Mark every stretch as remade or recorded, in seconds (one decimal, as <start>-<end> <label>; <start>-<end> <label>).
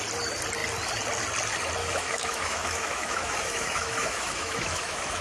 0.0-1.8 recorded; 1.8-5.2 remade